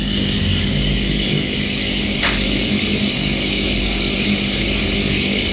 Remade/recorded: remade